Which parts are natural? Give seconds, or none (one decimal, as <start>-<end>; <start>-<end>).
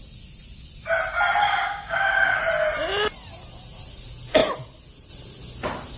0.0-1.4; 2.4-6.0